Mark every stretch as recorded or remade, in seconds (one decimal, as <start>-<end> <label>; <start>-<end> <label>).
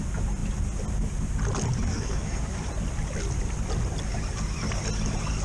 0.0-1.9 recorded; 1.9-2.4 remade; 2.4-5.4 recorded